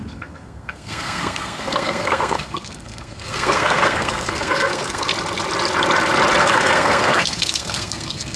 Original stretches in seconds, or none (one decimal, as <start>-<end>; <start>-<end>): 5.1-6.4